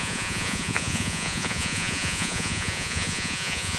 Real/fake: fake